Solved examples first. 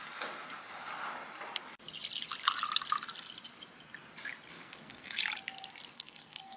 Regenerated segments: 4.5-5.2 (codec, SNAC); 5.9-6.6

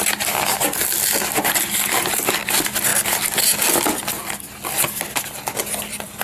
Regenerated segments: none

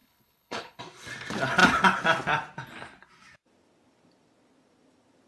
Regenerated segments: 0.0-0.8 (codec, HILCodec)

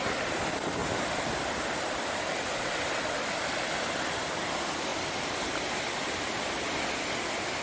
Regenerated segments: none

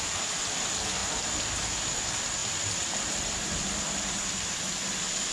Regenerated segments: none

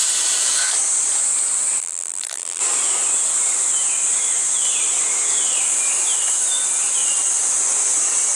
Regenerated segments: 1.8-2.6 (vocoder, BigVGAN v2)

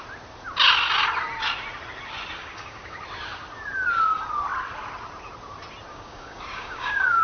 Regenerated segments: 2.4-3.0 (codec, DAC); 5.9-7.2